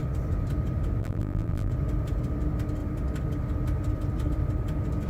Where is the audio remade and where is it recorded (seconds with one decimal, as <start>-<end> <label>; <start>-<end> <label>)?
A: 0.0-1.0 recorded; 1.0-1.7 remade; 1.7-5.1 recorded